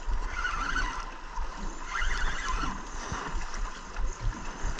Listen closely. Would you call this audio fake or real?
real